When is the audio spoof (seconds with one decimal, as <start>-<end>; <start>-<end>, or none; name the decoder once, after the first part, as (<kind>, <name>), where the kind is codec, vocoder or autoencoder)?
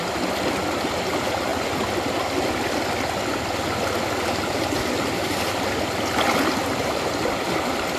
none